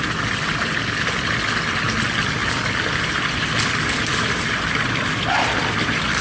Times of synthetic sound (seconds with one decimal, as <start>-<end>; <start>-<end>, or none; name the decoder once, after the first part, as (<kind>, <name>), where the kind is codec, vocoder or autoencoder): none